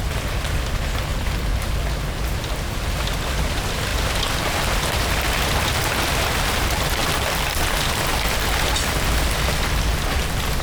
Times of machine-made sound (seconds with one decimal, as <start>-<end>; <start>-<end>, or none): none

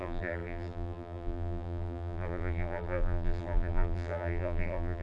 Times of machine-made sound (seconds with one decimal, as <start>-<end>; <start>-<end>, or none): 0.0-5.0

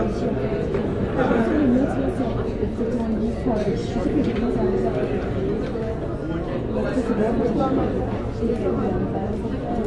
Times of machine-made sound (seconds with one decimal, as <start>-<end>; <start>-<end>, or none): 0.8-1.4; 3.8-4.5

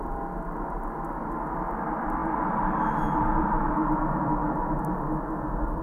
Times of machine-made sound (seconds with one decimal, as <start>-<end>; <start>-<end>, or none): 0.0-5.8

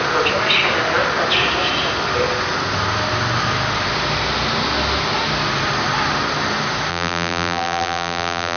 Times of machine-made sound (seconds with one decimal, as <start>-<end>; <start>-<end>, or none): 6.9-8.6